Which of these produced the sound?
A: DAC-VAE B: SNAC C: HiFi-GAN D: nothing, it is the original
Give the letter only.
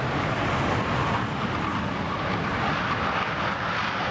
D